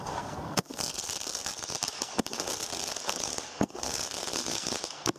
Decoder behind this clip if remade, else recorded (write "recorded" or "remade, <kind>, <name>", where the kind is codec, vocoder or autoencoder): remade, codec, SNAC